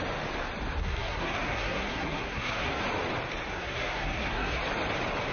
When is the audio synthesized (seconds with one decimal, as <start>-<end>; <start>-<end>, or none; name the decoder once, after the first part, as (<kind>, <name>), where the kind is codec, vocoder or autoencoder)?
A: 0.8-2.8 (codec, SNAC); 3.5-4.6